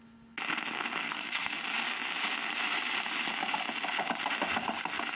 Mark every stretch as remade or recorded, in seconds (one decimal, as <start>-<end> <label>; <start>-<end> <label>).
0.0-1.0 recorded; 1.0-1.6 remade; 1.6-5.1 recorded